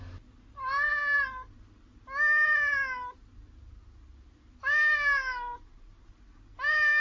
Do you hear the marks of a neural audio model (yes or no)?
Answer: no